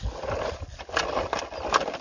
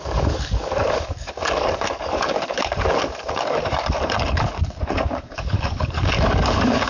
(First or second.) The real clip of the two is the first